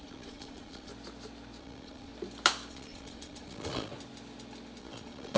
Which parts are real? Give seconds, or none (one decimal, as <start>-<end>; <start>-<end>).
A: 0.9-1.6; 2.1-2.7; 3.9-4.8